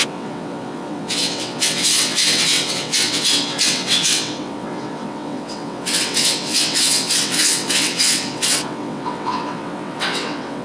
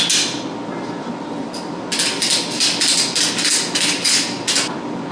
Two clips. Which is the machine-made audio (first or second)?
first